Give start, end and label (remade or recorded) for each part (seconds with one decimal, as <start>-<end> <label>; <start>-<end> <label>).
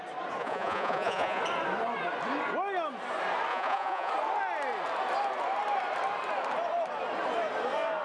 0.0-0.4 recorded; 0.4-1.4 remade; 1.4-3.5 recorded; 3.5-4.1 remade; 4.1-8.0 recorded